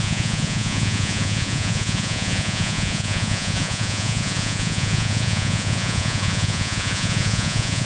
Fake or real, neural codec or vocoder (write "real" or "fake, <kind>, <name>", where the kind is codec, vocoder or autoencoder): fake, vocoder, Vocos